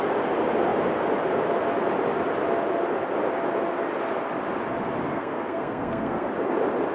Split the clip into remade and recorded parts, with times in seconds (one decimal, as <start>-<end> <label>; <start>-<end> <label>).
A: 0.0-5.1 recorded; 5.1-6.3 remade; 6.3-6.9 recorded